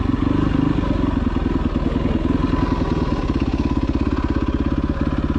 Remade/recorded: recorded